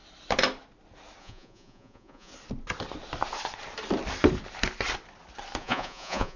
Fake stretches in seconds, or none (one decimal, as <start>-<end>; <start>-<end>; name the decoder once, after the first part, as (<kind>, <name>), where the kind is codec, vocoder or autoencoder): 1.2-2.3 (vocoder, Vocos); 5.6-6.4